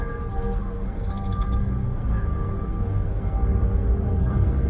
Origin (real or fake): fake